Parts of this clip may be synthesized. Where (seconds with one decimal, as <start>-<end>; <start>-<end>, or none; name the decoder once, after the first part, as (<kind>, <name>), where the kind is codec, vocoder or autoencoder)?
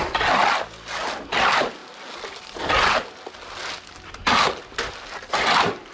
none